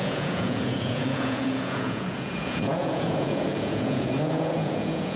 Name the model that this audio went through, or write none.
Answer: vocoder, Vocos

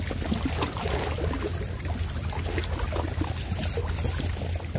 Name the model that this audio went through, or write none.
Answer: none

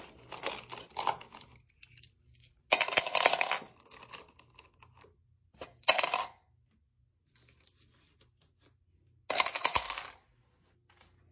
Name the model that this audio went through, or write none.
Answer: none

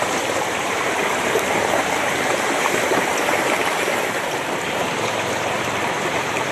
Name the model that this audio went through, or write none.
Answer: vocoder, BigVGAN v2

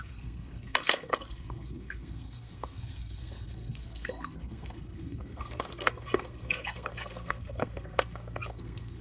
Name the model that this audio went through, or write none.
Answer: codec, SNAC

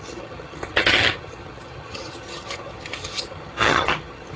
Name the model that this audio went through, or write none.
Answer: vocoder, HiFi-GAN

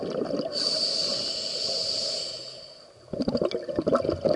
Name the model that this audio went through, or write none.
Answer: none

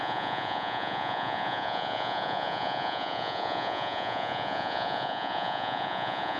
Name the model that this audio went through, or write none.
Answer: vocoder, Vocos